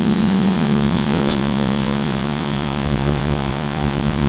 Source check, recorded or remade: remade